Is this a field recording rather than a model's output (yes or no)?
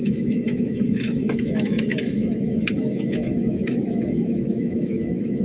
no